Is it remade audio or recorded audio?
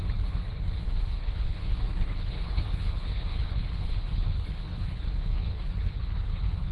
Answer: remade